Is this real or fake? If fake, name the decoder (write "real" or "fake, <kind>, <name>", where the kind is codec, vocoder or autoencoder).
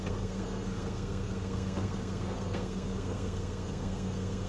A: fake, codec, SNAC